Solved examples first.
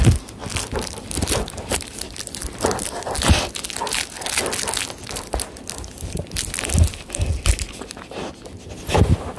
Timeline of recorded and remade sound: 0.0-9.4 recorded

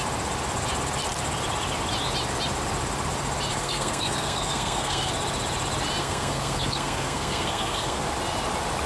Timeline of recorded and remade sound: 0.0-3.5 recorded; 3.5-5.1 remade; 5.1-6.0 recorded; 6.0-8.0 remade; 8.0-8.9 recorded

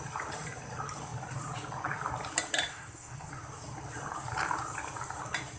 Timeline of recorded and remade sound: 0.0-2.7 recorded; 2.7-3.3 remade; 3.3-5.6 recorded